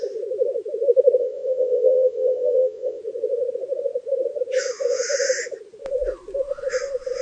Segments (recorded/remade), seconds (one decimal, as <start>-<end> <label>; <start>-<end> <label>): 0.0-1.2 recorded; 1.2-3.0 remade; 3.0-7.2 recorded

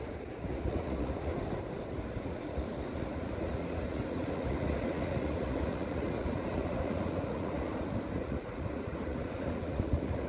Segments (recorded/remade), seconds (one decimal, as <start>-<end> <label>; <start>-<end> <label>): 0.0-1.3 remade; 1.3-1.9 recorded; 1.9-10.3 remade

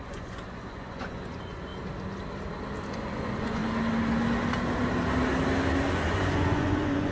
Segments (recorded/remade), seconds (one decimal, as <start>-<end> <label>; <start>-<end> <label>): 0.0-1.7 remade; 1.7-2.9 recorded; 2.9-3.6 remade; 3.6-5.9 recorded; 5.9-7.1 remade

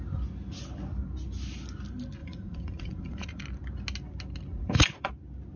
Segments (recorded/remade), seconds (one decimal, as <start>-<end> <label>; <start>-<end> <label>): 0.0-2.2 recorded; 2.2-3.4 remade; 3.4-4.5 recorded; 4.5-5.1 remade; 5.1-5.6 recorded

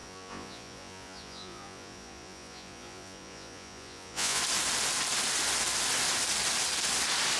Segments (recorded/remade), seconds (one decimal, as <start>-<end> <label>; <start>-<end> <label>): 0.0-4.4 remade; 4.4-7.4 recorded